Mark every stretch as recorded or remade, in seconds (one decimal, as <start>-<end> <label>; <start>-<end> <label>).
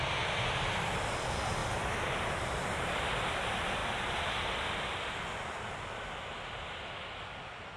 0.0-7.8 recorded